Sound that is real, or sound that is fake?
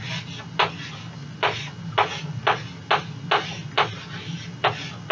real